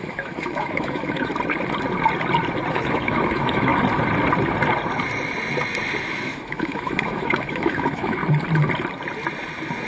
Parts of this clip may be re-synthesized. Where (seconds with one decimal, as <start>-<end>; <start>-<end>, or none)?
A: 0.0-1.3; 2.7-3.7; 6.0-8.2